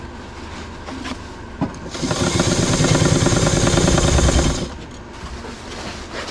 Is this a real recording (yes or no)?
yes